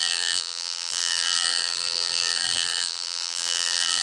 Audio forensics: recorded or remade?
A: remade